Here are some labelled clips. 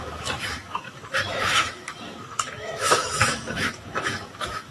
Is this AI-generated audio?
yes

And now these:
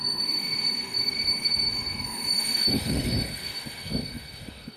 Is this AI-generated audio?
yes